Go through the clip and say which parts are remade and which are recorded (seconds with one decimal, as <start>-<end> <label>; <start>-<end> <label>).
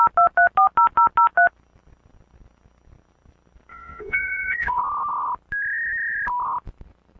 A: 0.0-3.7 recorded; 3.7-4.8 remade; 4.8-7.2 recorded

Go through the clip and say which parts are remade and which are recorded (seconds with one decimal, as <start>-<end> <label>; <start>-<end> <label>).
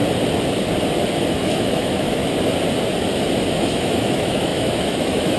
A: 0.0-1.3 recorded; 1.3-2.2 remade; 2.2-3.5 recorded; 3.5-5.4 remade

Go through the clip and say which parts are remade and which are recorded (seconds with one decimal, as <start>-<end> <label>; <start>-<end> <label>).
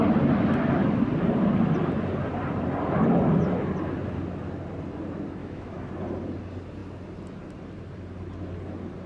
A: 0.0-5.4 recorded; 5.4-5.9 remade; 5.9-9.1 recorded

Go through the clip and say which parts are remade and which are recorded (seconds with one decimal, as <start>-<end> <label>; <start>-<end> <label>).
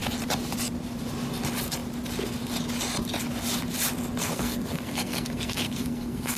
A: 0.0-4.2 recorded; 4.2-6.4 remade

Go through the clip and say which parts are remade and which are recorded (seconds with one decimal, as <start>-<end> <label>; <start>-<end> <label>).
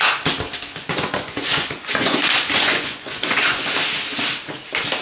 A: 0.0-0.7 recorded; 0.7-3.7 remade; 3.7-5.0 recorded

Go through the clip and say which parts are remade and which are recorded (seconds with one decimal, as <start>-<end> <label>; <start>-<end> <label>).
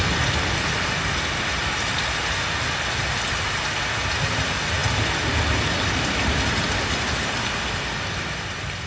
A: 0.0-8.9 recorded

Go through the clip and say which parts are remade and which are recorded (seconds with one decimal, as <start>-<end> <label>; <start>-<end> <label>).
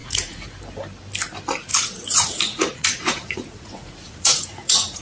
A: 0.0-0.6 remade; 0.6-1.7 recorded; 1.7-5.0 remade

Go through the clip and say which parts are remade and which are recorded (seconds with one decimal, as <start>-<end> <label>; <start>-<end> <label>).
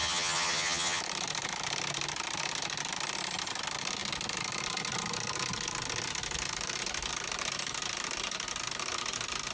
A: 0.0-1.0 remade; 1.0-9.5 recorded